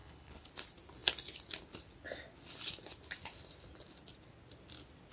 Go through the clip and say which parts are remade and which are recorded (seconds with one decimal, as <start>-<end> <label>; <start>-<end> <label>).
0.0-0.5 remade; 0.5-5.1 recorded